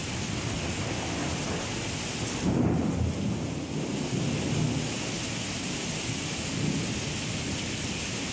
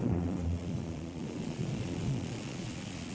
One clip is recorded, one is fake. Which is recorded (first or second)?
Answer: first